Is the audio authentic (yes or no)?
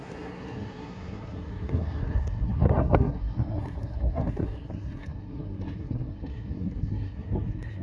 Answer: no